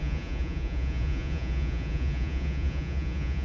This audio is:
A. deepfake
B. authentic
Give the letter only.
A